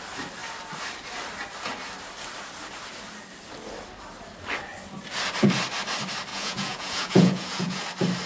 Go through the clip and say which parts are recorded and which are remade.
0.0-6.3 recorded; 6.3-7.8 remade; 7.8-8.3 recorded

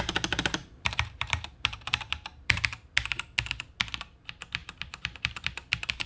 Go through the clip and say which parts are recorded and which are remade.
0.0-0.6 recorded; 0.6-2.9 remade; 2.9-4.6 recorded; 4.6-6.1 remade

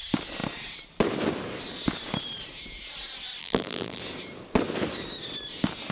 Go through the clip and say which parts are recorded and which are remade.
0.0-3.4 recorded; 3.4-4.0 remade; 4.0-5.9 recorded

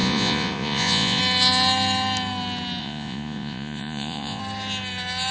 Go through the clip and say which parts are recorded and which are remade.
0.0-1.2 remade; 1.2-2.8 recorded; 2.8-4.4 remade; 4.4-5.3 recorded

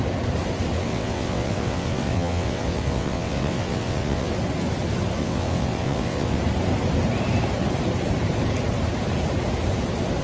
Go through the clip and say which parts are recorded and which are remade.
0.0-0.8 recorded; 0.8-4.3 remade; 4.3-5.2 recorded; 5.2-6.4 remade; 6.4-10.2 recorded

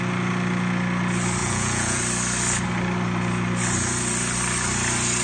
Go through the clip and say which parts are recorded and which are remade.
0.0-1.4 recorded; 1.4-2.0 remade; 2.0-5.2 recorded

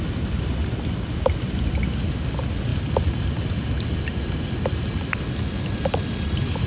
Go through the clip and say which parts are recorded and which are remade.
0.0-2.7 recorded; 2.7-4.4 remade; 4.4-6.7 recorded